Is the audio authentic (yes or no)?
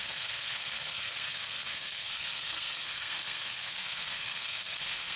no